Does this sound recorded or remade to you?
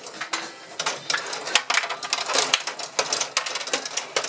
recorded